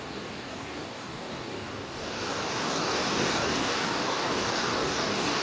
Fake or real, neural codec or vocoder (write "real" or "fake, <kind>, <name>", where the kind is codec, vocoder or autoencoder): fake, codec, DAC